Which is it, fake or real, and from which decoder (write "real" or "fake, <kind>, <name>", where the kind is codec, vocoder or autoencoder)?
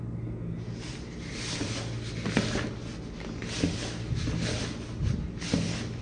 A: real